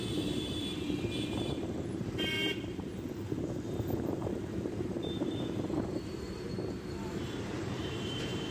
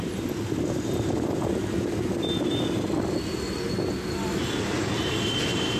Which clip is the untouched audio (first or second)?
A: second